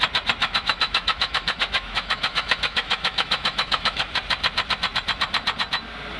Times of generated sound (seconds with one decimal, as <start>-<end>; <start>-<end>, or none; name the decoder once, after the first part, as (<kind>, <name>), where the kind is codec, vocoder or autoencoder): 0.4-4.1 (autoencoder, DAC-VAE)